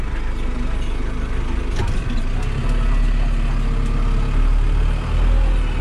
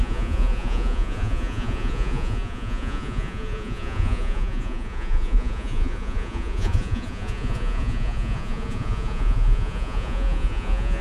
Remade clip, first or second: second